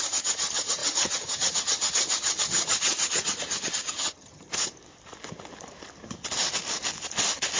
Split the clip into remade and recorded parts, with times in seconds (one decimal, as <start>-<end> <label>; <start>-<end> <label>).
0.0-4.5 remade; 4.5-7.6 recorded